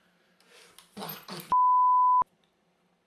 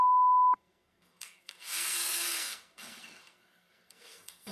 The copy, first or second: second